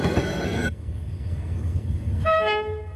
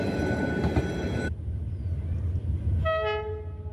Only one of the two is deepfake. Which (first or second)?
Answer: first